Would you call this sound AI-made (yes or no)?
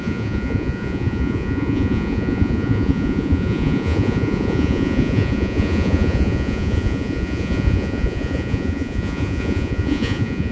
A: yes